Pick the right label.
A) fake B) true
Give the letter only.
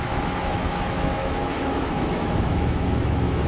A